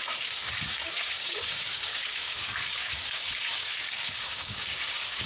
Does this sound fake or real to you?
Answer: fake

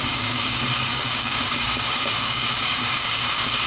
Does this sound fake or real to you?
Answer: fake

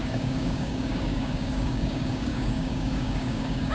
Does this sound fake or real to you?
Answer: fake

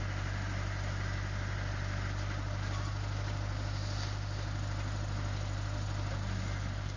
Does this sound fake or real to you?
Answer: real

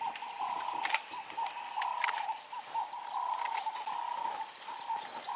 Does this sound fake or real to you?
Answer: real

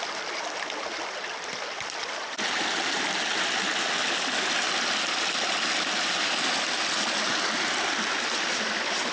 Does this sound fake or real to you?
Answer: real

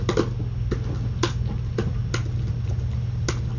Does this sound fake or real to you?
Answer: real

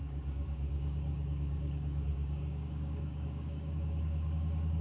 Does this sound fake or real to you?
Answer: fake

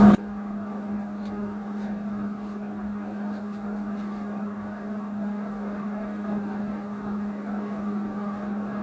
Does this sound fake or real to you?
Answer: fake